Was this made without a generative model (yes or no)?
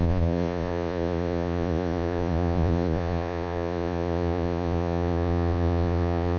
no